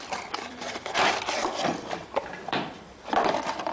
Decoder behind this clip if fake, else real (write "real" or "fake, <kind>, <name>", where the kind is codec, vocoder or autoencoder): fake, vocoder, BigVGAN v2